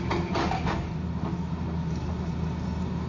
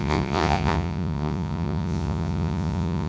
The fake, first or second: second